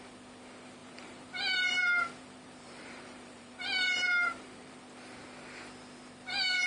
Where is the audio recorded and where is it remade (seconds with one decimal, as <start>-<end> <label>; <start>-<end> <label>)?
0.0-0.8 recorded; 0.8-4.8 remade; 4.8-6.7 recorded